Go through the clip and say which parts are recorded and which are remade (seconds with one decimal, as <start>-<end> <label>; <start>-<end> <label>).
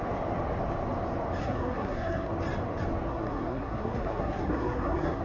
0.0-1.4 recorded; 1.4-2.3 remade; 2.3-3.1 recorded; 3.1-5.2 remade